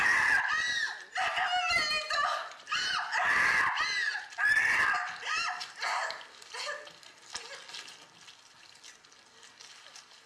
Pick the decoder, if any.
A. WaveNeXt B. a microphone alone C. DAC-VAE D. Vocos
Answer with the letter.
B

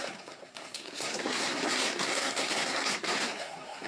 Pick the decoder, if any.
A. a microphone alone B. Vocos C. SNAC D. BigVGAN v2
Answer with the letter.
C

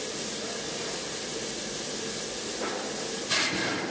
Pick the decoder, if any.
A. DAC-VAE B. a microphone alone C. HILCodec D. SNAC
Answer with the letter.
B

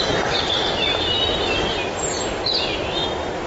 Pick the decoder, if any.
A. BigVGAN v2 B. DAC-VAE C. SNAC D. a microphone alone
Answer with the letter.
D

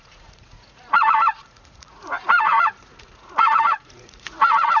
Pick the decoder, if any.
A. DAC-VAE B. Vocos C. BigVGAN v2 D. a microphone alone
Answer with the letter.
B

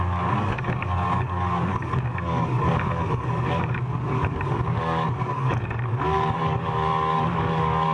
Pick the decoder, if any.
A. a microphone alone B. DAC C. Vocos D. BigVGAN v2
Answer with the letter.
B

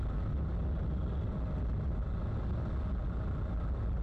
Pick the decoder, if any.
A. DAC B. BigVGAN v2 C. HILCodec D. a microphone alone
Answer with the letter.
D